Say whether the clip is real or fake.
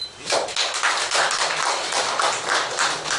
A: real